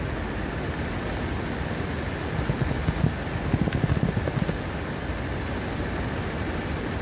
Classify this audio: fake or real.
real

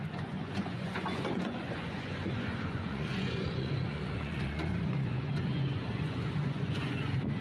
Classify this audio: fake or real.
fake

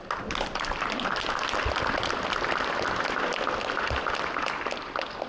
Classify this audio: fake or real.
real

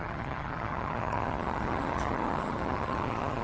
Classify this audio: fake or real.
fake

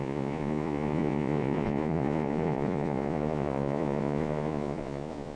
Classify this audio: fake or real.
fake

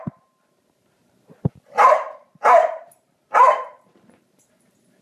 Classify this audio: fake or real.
fake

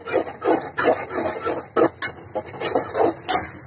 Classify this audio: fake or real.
real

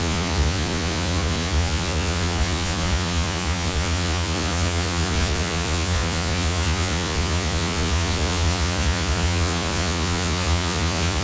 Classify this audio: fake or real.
fake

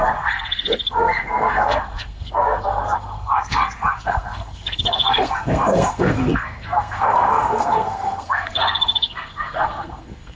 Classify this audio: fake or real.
fake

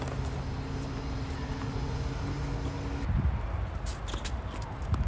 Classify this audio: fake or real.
real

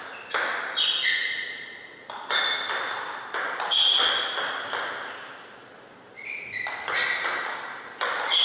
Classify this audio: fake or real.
real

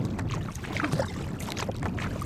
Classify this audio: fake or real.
real